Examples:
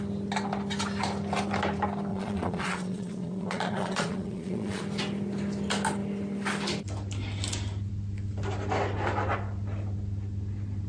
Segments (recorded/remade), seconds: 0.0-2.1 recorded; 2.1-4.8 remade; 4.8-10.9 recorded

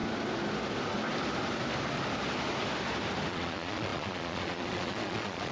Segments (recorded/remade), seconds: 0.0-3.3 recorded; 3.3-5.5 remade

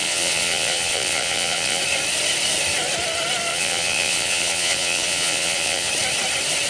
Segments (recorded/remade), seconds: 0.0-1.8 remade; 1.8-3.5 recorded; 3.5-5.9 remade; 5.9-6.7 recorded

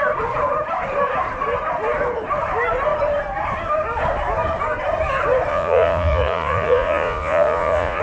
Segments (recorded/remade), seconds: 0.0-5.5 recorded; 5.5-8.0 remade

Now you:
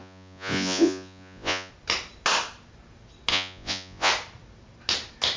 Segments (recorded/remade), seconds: 0.0-1.7 remade; 1.7-3.3 recorded; 3.3-4.1 remade; 4.1-5.4 recorded

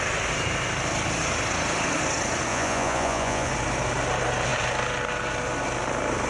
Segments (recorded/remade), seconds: 0.0-2.5 recorded; 2.5-3.5 remade; 3.5-6.3 recorded